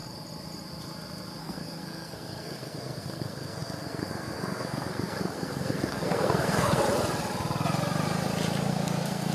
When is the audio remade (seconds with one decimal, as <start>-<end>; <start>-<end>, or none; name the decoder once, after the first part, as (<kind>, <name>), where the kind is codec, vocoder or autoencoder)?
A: 1.4-6.8 (codec, SNAC); 8.7-9.3